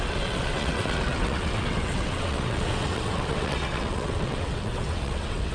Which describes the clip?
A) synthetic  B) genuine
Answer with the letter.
A